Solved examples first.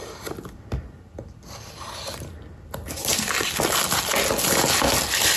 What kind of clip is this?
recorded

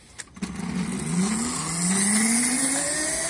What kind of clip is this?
recorded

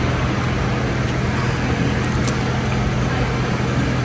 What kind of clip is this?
recorded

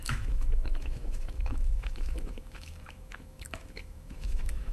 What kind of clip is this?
remade